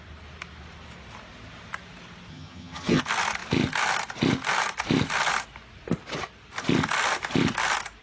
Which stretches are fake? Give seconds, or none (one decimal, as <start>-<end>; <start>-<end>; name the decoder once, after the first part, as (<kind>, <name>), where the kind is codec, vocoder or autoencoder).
2.3-3.0 (vocoder, HiFi-GAN)